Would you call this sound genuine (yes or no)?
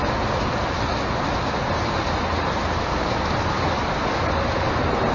yes